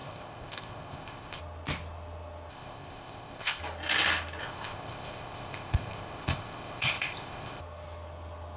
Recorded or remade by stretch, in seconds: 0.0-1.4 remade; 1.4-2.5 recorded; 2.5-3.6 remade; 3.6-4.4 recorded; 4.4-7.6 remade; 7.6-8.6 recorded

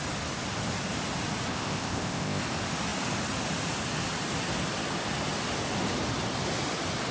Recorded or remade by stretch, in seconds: 0.0-1.5 recorded; 1.5-2.4 remade; 2.4-7.1 recorded

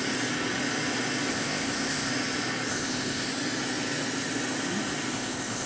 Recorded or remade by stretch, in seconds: 0.0-1.3 recorded; 1.3-2.1 remade; 2.1-2.7 recorded; 2.7-3.3 remade; 3.3-5.1 recorded; 5.1-5.7 remade

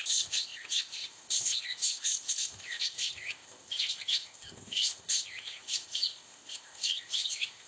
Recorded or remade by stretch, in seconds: 0.0-7.7 remade

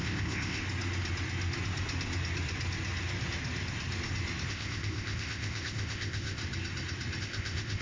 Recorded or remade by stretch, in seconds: 0.0-0.6 remade; 0.6-4.5 recorded; 4.5-6.4 remade; 6.4-7.2 recorded; 7.2-7.8 remade